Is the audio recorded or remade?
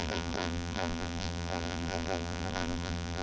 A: remade